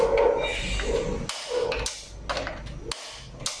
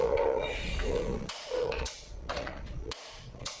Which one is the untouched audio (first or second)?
first